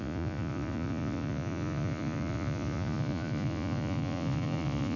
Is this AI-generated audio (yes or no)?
yes